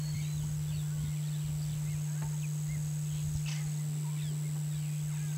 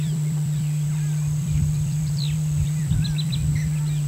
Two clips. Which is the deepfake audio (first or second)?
second